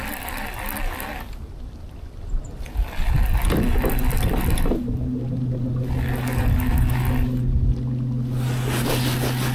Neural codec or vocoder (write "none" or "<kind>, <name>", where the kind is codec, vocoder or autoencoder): none